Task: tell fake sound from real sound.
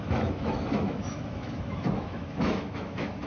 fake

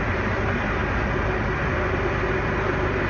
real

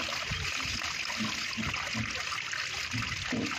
real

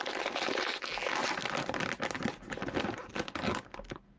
real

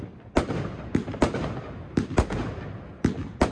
real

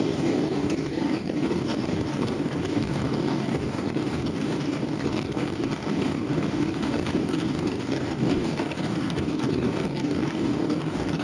fake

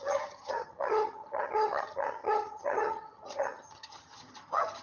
fake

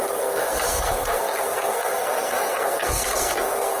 fake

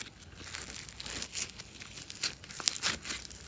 real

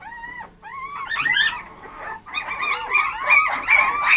real